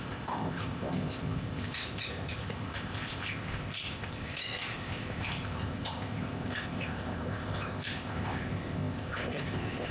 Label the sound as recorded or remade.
remade